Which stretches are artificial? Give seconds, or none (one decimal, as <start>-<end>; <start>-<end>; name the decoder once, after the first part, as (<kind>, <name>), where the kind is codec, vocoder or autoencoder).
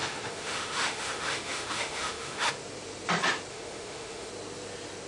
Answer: 0.0-2.5 (autoencoder, DAC-VAE); 3.5-4.3